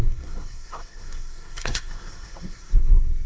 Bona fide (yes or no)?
no